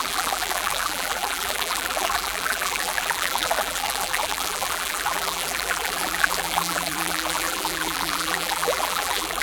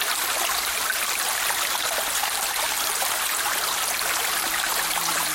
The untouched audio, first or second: second